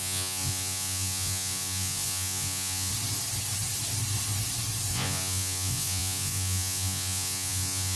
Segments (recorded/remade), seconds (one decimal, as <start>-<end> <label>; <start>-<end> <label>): 0.0-2.9 remade; 2.9-4.9 recorded; 4.9-8.0 remade